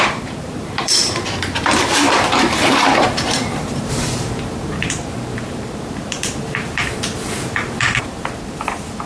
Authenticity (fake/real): fake